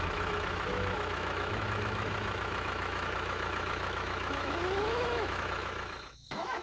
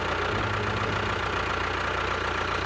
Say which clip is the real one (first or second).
second